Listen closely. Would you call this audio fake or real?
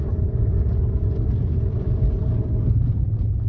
real